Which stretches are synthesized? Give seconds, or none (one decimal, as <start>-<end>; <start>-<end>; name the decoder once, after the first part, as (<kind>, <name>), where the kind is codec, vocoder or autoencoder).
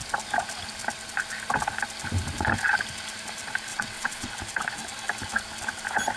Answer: 3.7-4.3 (vocoder, WaveNeXt)